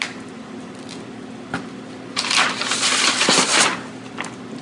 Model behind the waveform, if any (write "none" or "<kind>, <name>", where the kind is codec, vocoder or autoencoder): none